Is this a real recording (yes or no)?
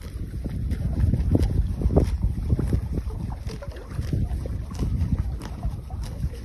yes